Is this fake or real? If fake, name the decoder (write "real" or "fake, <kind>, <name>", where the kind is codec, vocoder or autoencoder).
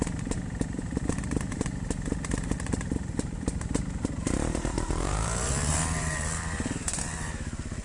fake, vocoder, BigVGAN v2